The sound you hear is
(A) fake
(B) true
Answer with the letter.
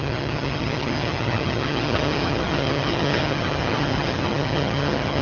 A